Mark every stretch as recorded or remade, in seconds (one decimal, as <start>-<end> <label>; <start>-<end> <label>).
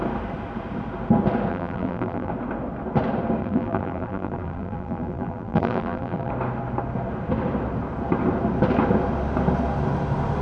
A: 0.0-1.5 recorded; 1.5-2.3 remade; 2.3-3.4 recorded; 3.4-6.3 remade; 6.3-10.4 recorded